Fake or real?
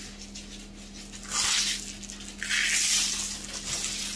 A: real